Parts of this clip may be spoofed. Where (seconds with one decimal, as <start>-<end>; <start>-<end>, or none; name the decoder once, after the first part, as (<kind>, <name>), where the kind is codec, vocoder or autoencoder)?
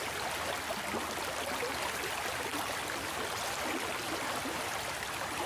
2.5-3.1 (vocoder, BigVGAN v2)